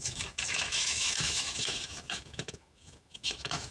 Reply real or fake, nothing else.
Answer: fake